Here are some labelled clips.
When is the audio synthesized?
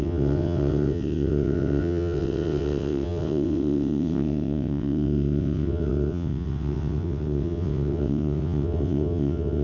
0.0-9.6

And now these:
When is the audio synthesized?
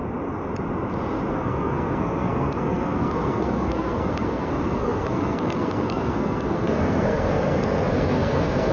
1.3-8.7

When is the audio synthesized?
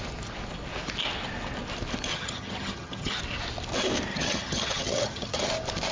2.1-3.2; 4.1-5.5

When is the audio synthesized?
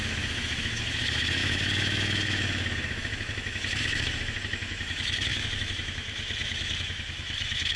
0.0-7.8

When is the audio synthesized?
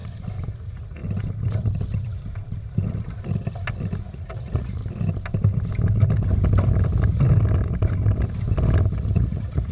0.6-1.0; 4.1-4.8; 9.1-9.7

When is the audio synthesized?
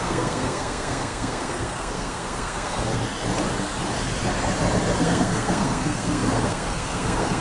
0.0-3.0; 5.0-7.4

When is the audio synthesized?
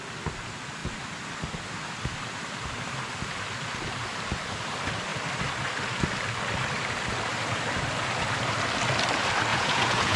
9.5-10.2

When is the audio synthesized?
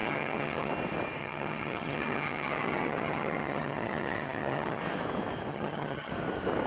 0.0-0.7; 1.2-4.8; 5.5-6.1